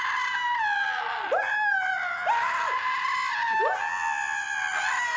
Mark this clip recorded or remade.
recorded